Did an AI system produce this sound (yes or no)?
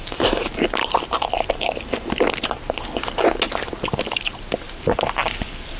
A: no